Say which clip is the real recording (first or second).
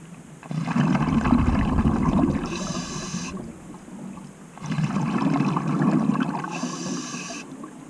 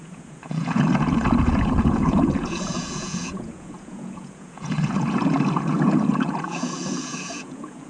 first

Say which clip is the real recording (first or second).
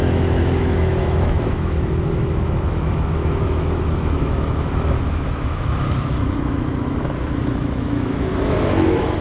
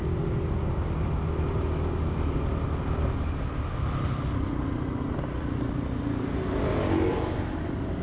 second